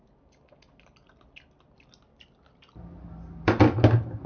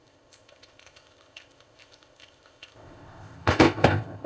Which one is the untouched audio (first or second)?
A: first